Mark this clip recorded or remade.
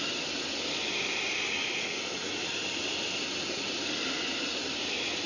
recorded